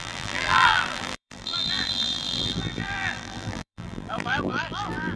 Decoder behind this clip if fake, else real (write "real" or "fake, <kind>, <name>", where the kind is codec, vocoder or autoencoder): fake, vocoder, BigVGAN v2